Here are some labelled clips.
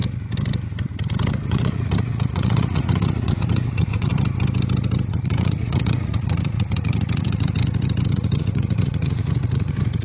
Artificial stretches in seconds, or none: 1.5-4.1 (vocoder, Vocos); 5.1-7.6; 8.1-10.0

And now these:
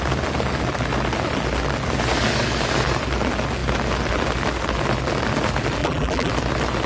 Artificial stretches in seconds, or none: 5.8-6.3 (vocoder, BigVGAN v2)